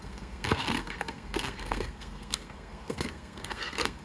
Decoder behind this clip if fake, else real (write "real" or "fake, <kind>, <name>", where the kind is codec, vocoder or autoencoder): fake, codec, SNAC